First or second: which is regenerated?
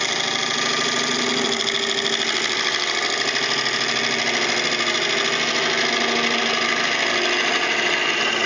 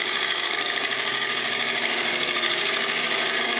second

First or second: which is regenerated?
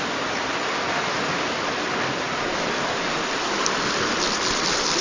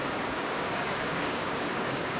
second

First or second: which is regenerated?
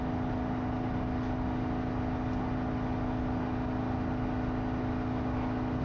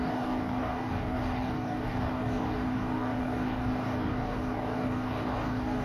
second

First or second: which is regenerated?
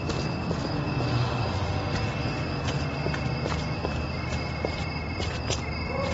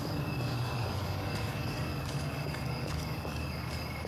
second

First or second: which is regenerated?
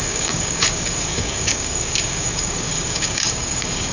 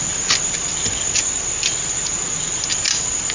first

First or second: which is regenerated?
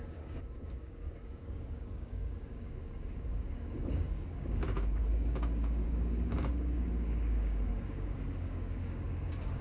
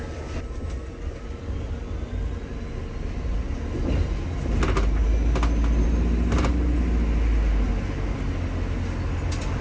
first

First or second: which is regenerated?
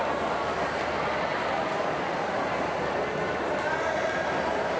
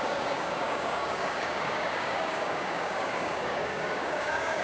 second